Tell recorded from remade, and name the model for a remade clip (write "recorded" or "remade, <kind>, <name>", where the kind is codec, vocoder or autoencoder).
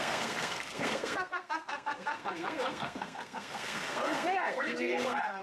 remade, codec, SNAC